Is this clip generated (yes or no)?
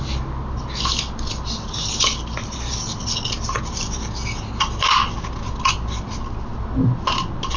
no